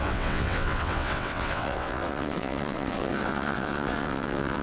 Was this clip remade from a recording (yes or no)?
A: yes